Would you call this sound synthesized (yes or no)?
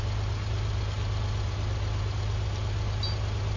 no